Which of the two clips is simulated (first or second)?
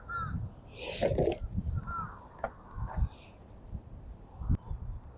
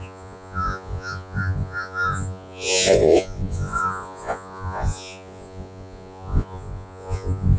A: second